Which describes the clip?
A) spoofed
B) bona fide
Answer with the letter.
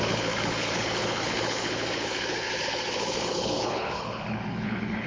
A